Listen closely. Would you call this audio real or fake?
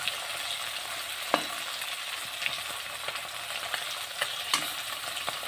real